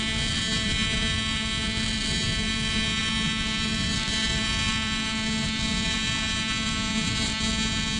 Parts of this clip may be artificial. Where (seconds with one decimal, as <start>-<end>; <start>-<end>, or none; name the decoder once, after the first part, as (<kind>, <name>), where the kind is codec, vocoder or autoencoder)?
none